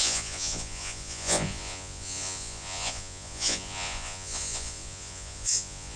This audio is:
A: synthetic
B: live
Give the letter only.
A